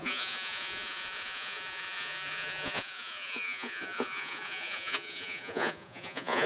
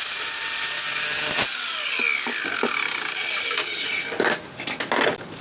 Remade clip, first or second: first